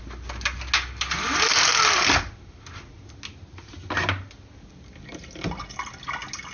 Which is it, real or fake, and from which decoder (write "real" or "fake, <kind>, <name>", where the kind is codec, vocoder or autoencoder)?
real